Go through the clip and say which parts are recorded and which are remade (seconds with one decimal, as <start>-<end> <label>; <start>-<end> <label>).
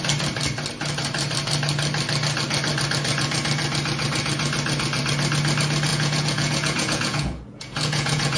0.0-5.9 recorded; 5.9-8.4 remade